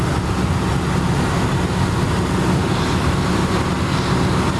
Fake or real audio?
real